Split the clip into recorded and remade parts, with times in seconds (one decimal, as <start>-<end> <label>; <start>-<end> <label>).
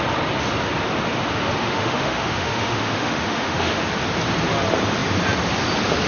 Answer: 0.0-1.6 recorded; 1.6-3.8 remade; 3.8-6.1 recorded